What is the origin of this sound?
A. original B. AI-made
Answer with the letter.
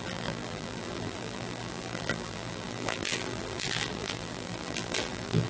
B